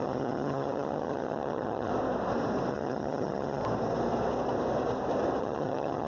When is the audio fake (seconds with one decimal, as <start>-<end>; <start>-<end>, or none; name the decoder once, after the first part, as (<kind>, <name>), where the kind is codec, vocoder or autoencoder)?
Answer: 0.0-1.9 (vocoder, HiFi-GAN); 2.7-3.6; 5.4-6.1